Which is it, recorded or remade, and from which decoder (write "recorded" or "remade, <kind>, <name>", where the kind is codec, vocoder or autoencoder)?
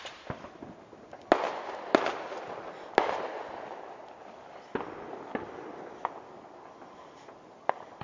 recorded